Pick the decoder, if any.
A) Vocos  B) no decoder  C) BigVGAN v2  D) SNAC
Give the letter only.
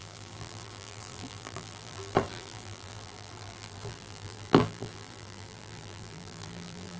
C